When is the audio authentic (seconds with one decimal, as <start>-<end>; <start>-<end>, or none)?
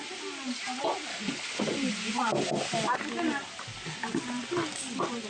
0.0-1.1; 1.6-5.3